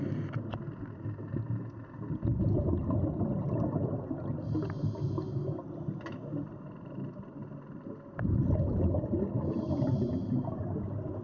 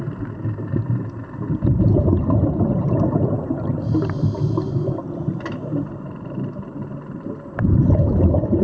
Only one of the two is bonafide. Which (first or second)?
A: first